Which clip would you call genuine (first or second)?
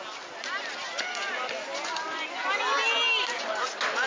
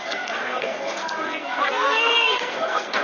first